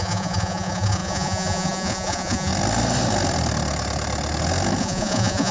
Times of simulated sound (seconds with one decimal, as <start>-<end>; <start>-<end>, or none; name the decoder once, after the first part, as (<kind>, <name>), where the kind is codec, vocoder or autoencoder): 0.0-2.5 (vocoder, Vocos); 4.8-5.5